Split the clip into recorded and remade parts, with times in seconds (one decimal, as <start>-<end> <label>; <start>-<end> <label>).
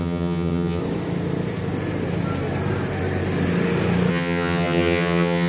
0.0-0.8 remade; 0.8-4.1 recorded; 4.1-5.5 remade